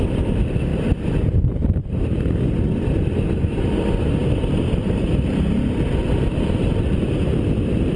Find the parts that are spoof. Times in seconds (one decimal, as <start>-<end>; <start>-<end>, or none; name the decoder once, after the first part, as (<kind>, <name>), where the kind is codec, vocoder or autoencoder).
0.7-3.6 (vocoder, BigVGAN v2); 4.2-7.4